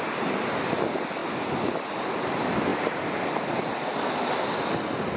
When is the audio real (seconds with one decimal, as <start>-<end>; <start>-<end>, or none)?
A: 0.0-2.7; 3.4-5.2

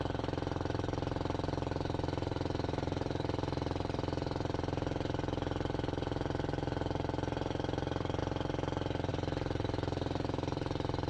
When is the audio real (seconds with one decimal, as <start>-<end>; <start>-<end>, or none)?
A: 8.2-9.1

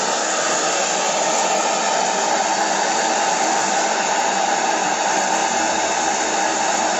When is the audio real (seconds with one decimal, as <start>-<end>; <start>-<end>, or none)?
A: 0.0-0.8; 4.9-7.0

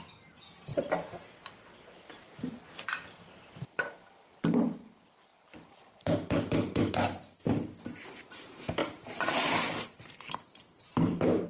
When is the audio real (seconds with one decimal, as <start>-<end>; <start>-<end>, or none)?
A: 0.0-0.7; 3.8-5.3; 6.9-8.8

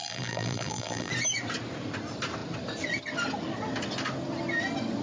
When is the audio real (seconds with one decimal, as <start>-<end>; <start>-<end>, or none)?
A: 1.1-5.0

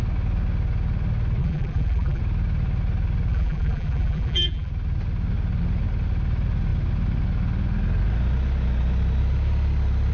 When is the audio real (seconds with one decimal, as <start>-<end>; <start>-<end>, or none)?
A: 0.0-1.4; 2.2-3.3; 4.7-10.1

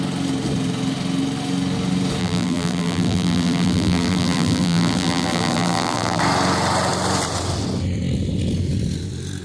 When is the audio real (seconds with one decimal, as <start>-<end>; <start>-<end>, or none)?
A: 0.0-2.2; 6.2-9.4

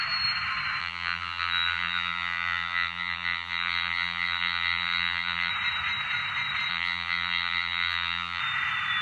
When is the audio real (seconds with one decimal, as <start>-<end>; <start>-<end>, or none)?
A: 0.0-0.8; 5.5-6.7; 8.4-9.0